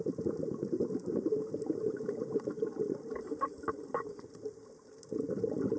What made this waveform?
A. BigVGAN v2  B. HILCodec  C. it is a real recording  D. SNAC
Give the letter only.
C